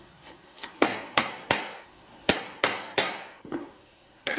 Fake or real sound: fake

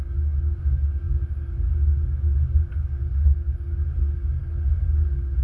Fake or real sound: fake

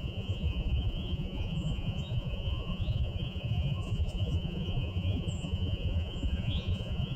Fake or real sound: fake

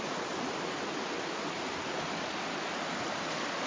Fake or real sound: real